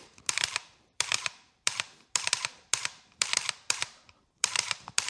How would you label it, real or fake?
fake